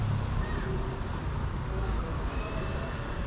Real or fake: real